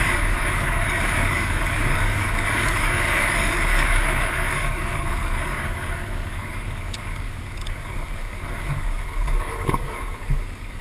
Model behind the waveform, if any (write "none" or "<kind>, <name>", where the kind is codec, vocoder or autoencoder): codec, DAC